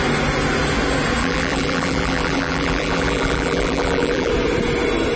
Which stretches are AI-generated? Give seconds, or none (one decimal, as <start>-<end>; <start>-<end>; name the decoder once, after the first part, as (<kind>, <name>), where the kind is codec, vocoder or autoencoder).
1.2-4.3 (vocoder, BigVGAN v2)